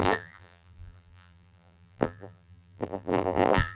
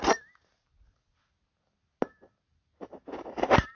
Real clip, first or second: second